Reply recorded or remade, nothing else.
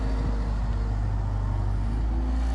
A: recorded